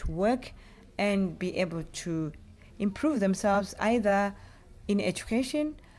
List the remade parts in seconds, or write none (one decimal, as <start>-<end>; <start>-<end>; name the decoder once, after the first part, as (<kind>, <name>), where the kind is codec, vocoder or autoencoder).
2.5-3.6 (vocoder, BigVGAN v2); 4.1-5.5